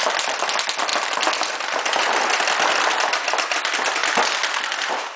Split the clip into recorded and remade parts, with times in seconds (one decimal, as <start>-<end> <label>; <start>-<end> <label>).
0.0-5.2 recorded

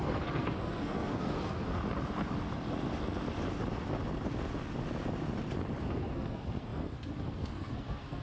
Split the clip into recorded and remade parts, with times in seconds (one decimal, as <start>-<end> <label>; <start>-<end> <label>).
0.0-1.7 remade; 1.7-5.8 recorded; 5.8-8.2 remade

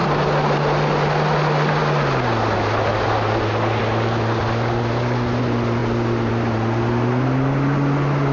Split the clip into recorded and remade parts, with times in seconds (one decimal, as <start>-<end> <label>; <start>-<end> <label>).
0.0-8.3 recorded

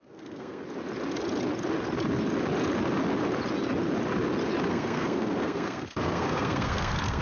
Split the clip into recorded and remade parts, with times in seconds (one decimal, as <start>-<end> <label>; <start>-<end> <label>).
0.0-0.6 remade; 0.6-4.7 recorded; 4.7-7.2 remade

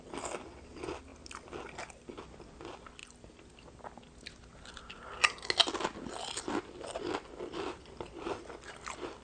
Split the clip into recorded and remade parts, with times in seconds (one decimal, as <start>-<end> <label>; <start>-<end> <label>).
0.0-9.2 recorded

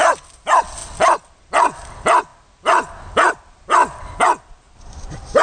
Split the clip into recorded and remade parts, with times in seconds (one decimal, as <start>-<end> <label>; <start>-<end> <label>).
0.0-5.4 recorded

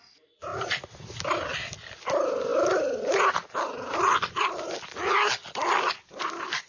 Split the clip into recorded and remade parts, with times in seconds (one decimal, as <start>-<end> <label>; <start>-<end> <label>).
0.0-6.7 recorded